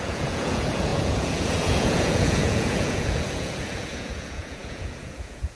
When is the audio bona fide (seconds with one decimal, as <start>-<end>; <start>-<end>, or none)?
none